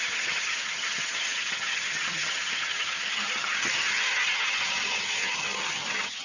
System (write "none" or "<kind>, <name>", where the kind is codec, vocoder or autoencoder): vocoder, HiFi-GAN